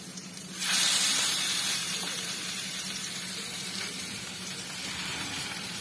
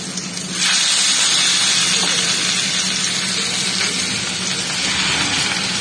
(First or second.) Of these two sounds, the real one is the second